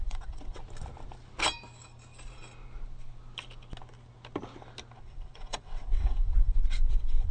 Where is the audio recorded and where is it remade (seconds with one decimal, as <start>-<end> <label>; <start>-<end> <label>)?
0.0-0.6 remade; 0.6-5.0 recorded; 5.0-7.3 remade